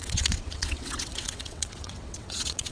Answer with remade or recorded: remade